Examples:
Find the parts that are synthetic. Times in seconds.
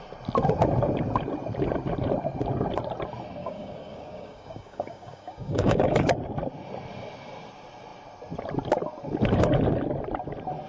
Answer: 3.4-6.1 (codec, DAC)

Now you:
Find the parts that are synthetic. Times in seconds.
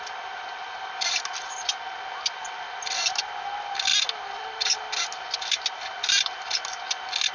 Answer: none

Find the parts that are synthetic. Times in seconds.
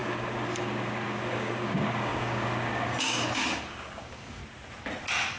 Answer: 0.0-4.4 (codec, DAC)